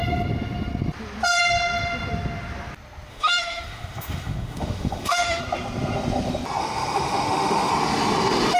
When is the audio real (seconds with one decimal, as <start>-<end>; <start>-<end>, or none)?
0.0-3.1; 5.4-6.6; 7.7-8.6